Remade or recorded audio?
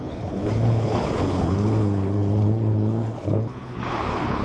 remade